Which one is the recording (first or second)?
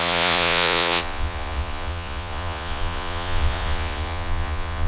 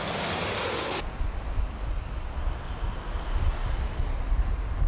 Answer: second